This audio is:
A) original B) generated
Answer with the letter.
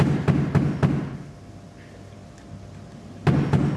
A